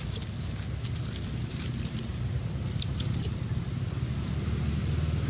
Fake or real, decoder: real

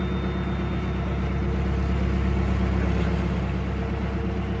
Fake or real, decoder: real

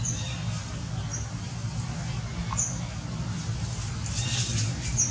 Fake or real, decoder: real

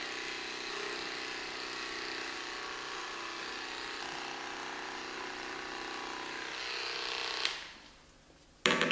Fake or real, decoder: real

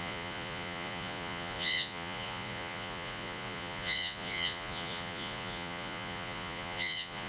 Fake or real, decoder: fake, vocoder, Vocos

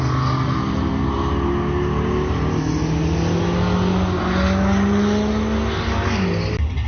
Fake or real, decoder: real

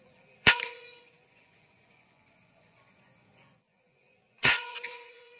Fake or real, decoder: fake, vocoder, Vocos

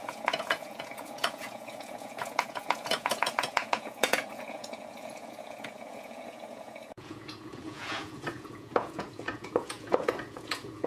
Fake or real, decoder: fake, vocoder, Vocos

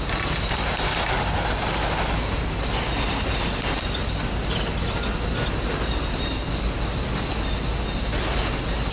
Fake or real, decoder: real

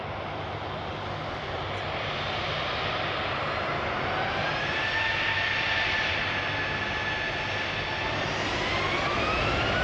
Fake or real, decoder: real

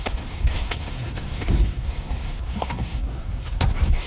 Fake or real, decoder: fake, codec, SNAC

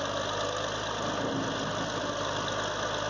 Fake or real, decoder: real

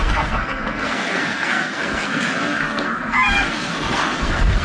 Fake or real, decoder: fake, codec, SNAC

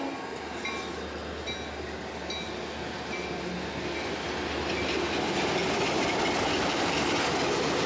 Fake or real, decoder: real